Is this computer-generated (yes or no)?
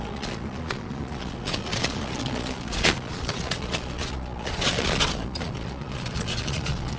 yes